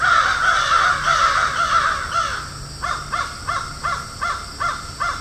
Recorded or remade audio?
recorded